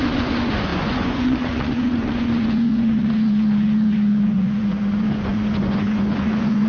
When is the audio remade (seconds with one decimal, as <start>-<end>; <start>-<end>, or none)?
0.0-6.7